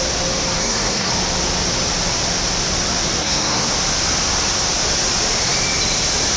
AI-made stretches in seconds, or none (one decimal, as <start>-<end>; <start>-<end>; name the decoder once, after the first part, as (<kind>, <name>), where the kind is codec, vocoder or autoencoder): 0.6-1.1 (codec, SNAC); 3.2-3.7